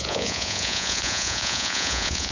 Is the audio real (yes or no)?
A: no